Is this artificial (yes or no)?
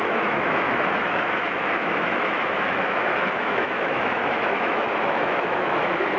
yes